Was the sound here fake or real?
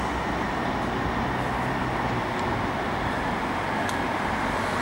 real